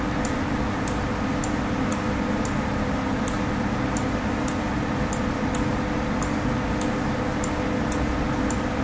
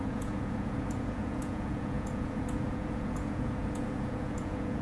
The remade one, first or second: second